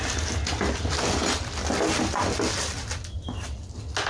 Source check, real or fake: real